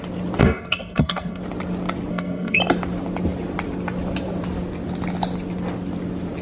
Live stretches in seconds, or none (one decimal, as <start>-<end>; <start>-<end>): 0.0-0.4; 1.4-2.1; 2.6-6.4